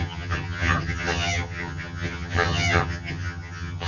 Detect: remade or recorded remade